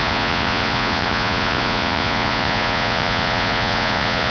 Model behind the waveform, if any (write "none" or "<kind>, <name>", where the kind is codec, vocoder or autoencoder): vocoder, Vocos